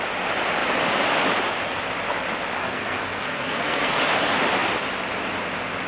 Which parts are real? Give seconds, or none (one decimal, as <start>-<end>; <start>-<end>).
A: 0.0-2.6; 4.0-5.9